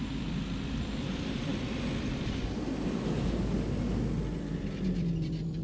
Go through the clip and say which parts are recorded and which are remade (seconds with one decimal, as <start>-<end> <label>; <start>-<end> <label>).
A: 0.0-1.5 remade; 1.5-4.9 recorded; 4.9-5.6 remade